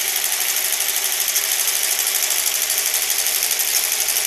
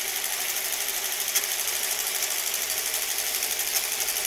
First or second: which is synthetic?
second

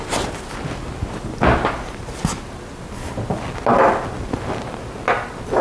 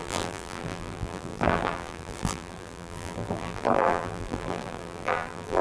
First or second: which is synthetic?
second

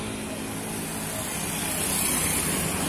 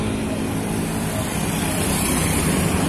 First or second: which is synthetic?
second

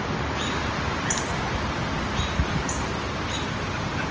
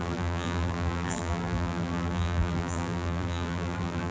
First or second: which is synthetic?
second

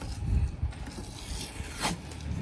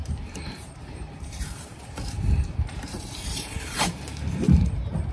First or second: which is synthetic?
second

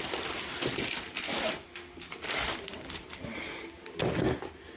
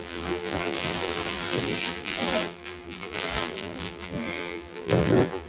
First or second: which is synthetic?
second